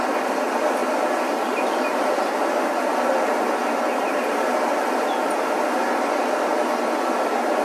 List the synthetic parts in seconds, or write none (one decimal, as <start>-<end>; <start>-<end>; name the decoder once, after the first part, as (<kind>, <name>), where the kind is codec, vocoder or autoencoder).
0.8-5.4 (vocoder, BigVGAN v2)